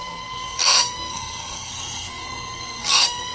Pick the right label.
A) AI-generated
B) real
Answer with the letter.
A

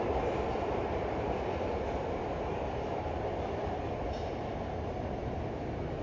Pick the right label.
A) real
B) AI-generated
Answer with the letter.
A